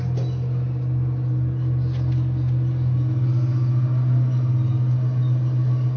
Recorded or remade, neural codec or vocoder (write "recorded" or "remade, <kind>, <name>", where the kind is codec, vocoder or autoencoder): recorded